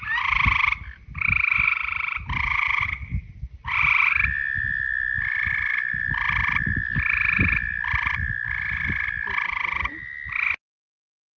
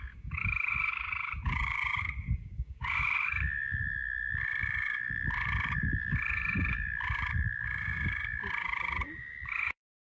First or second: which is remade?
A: second